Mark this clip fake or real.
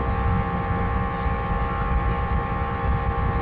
real